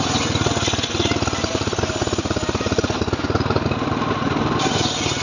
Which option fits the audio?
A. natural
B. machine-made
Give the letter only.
B